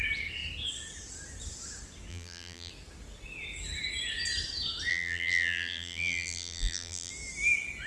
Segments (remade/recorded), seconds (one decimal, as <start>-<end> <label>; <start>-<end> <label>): 0.0-2.1 recorded; 2.1-2.7 remade; 2.7-4.9 recorded; 4.9-7.1 remade; 7.1-7.9 recorded

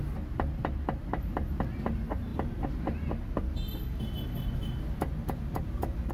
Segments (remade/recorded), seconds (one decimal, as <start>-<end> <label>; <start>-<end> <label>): 0.0-1.0 recorded; 1.0-1.6 remade; 1.6-6.1 recorded

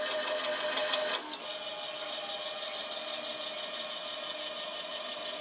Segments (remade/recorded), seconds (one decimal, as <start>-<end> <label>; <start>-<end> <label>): 0.0-1.0 remade; 1.0-2.0 recorded; 2.0-2.8 remade; 2.8-4.9 recorded; 4.9-5.4 remade

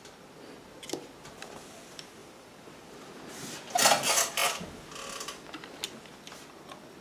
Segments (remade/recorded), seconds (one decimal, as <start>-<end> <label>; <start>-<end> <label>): 0.0-2.2 recorded; 2.2-3.1 remade; 3.1-7.0 recorded

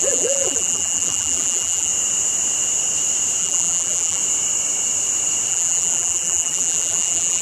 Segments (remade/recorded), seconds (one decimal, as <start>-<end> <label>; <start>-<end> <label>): 0.0-1.9 remade; 1.9-3.4 recorded; 3.4-4.2 remade; 4.2-5.5 recorded; 5.5-7.4 remade

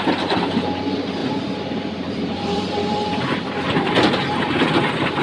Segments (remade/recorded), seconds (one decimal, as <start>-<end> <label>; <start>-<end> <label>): 0.0-1.2 recorded; 1.2-4.3 remade; 4.3-5.2 recorded